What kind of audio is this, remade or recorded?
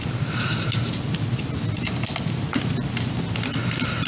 recorded